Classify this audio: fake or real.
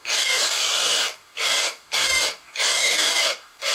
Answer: fake